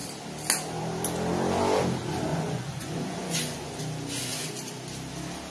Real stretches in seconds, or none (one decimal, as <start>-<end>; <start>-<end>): 0.0-2.3; 3.8-5.5